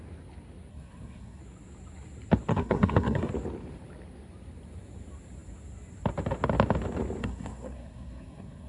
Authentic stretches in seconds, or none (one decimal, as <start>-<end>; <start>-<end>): 0.0-0.7; 1.4-2.5; 3.3-7.2